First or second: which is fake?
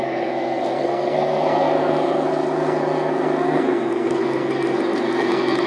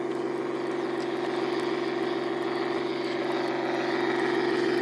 first